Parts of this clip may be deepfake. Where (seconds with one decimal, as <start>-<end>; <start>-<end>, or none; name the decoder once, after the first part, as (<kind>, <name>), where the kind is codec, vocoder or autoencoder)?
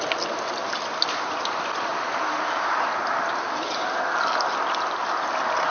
none